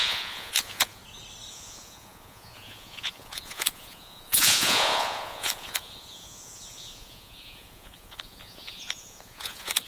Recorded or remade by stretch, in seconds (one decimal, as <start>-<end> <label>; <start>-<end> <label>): 0.0-1.0 remade; 1.0-1.5 recorded; 1.5-9.9 remade